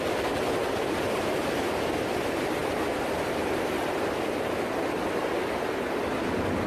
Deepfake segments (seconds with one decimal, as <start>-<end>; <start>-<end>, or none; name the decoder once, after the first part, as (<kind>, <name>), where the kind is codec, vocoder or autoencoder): 0.6-1.3 (vocoder, BigVGAN v2)